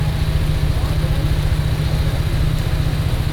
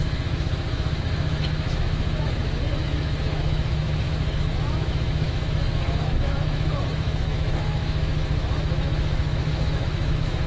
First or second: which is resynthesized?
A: second